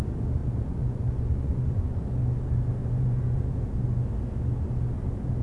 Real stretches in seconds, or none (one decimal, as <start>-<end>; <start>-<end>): 0.0-0.4; 2.0-2.8; 3.4-5.4